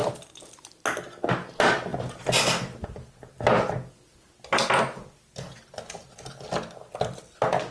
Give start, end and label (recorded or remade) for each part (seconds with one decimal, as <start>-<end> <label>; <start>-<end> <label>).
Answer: 0.0-7.7 recorded